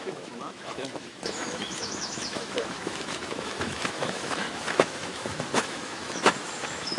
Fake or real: fake